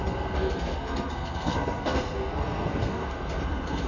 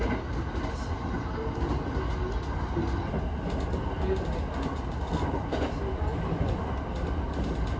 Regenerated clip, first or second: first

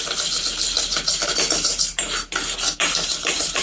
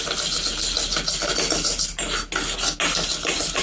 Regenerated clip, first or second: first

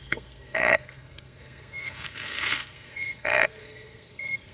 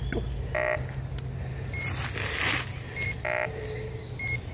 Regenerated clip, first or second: first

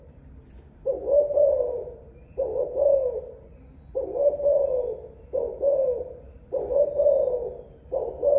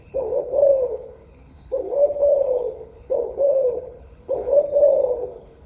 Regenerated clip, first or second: second